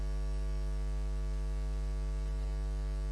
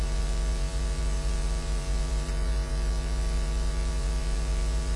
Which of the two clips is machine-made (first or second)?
second